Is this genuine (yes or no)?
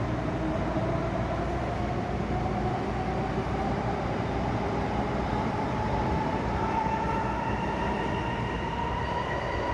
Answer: no